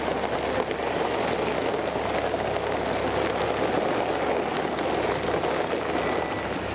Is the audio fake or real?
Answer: real